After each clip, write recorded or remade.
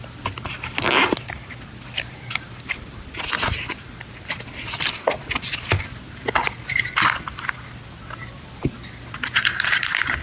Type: recorded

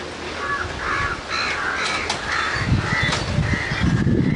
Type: recorded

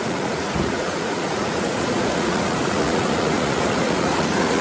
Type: remade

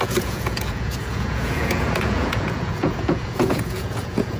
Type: remade